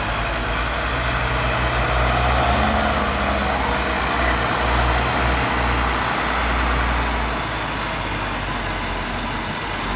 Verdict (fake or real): real